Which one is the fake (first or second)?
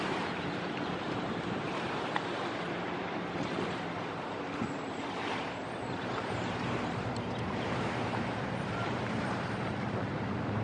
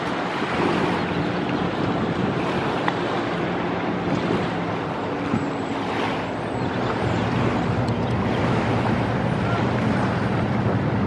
first